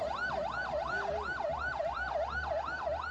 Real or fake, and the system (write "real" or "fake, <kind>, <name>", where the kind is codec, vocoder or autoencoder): real